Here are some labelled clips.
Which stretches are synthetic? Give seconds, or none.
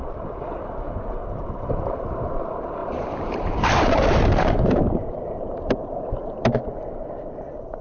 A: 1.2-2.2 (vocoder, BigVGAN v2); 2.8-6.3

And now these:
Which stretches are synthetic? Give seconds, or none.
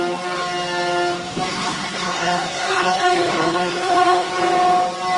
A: 1.5-4.3 (codec, SNAC)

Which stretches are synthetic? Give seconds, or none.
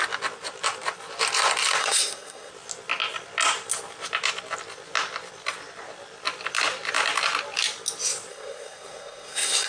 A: 1.8-2.5 (codec, SNAC); 8.3-9.7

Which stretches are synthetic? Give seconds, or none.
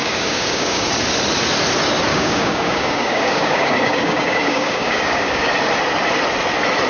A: 0.0-0.9 (codec, DAC); 2.1-5.5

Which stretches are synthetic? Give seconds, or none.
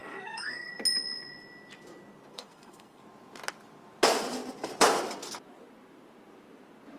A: 0.0-0.7 (codec, SNAC); 2.3-3.0